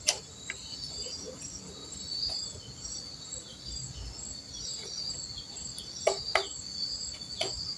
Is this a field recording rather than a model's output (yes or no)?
yes